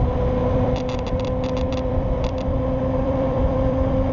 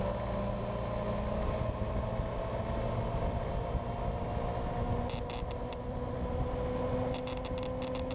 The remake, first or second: first